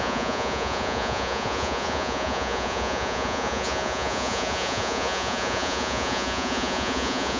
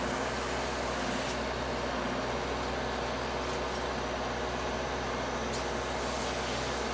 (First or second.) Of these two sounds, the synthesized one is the first